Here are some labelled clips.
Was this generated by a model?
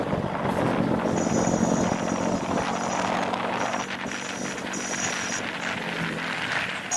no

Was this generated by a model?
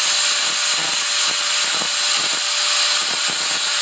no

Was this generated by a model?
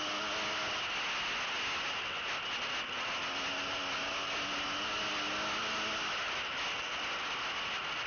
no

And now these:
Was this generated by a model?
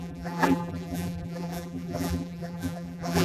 yes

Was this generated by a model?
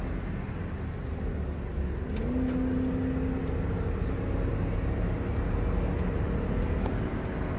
no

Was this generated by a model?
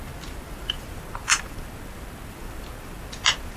yes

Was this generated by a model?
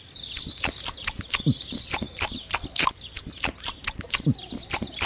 no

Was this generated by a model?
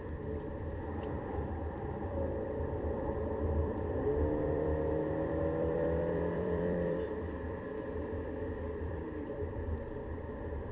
yes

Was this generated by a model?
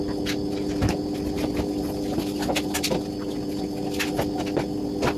no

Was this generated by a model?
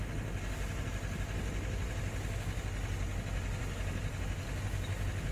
no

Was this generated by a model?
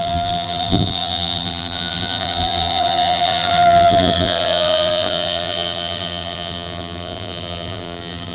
yes